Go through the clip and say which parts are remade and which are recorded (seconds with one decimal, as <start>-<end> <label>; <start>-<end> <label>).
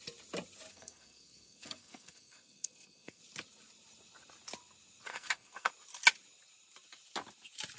0.0-0.7 recorded; 0.7-3.2 remade; 3.2-5.1 recorded; 5.1-5.7 remade; 5.7-7.8 recorded